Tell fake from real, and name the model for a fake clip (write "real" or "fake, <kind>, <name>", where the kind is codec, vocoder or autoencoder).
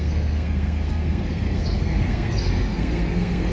fake, codec, SNAC